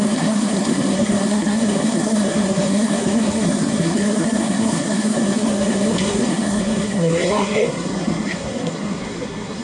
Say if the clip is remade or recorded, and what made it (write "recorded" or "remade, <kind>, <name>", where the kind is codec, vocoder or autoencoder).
remade, codec, SNAC